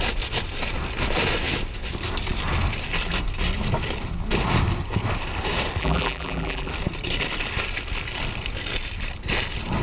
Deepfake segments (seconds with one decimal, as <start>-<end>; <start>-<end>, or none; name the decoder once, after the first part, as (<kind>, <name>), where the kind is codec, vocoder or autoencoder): 5.8-6.7 (vocoder, BigVGAN v2)